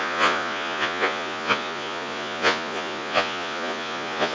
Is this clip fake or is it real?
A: fake